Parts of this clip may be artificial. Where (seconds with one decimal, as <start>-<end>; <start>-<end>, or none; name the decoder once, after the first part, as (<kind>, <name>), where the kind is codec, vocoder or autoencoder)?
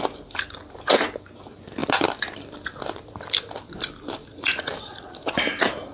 4.2-5.3 (vocoder, Vocos)